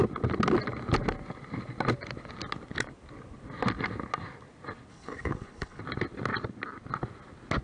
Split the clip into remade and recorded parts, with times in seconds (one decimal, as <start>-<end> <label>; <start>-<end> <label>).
0.0-4.9 recorded; 4.9-5.8 remade; 5.8-7.6 recorded